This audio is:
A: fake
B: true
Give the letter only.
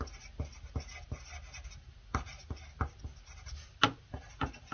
B